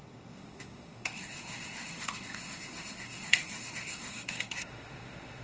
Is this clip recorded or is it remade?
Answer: remade